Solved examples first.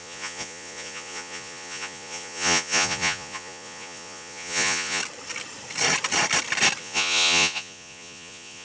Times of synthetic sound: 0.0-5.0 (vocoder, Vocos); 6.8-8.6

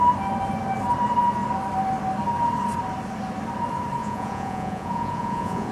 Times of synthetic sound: 4.0-5.7 (vocoder, Vocos)

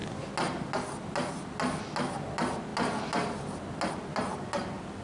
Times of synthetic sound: none

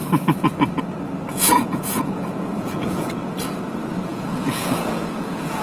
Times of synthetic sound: 1.3-3.4 (vocoder, Vocos); 4.1-5.6

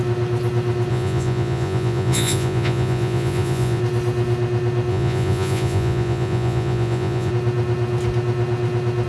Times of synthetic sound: 0.9-3.8 (vocoder, Vocos); 4.9-7.3

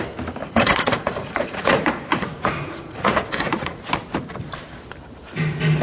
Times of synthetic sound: 0.4-3.9 (vocoder, Vocos)

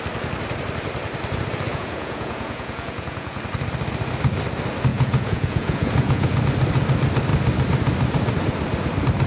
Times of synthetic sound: 1.7-3.4 (vocoder, Vocos); 4.9-6.4